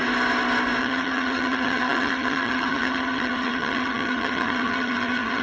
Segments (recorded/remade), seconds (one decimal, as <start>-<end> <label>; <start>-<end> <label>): 0.0-0.8 recorded; 0.8-5.4 remade